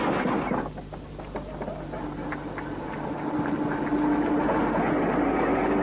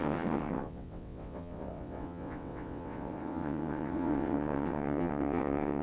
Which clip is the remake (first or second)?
second